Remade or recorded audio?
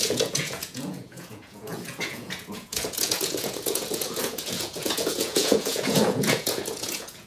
remade